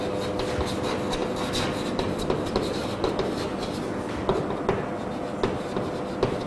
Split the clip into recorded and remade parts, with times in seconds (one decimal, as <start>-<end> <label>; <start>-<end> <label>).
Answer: 0.0-6.5 recorded